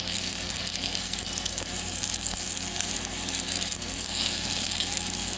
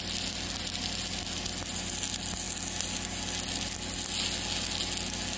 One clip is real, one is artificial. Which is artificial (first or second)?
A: first